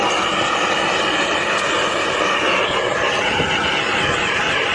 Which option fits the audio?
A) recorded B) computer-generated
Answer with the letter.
A